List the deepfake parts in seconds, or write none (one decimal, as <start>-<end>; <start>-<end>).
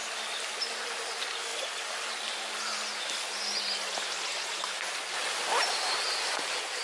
0.8-1.5; 5.6-6.8